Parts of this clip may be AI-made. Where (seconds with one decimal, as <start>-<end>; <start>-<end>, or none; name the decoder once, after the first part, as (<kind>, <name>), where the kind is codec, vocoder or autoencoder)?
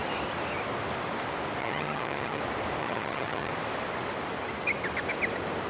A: 1.6-2.4 (vocoder, HiFi-GAN); 2.8-3.5